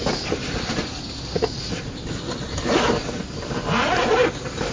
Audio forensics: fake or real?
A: real